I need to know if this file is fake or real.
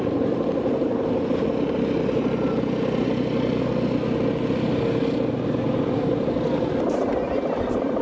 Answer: real